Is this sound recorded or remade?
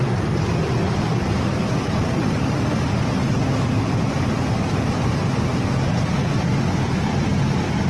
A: recorded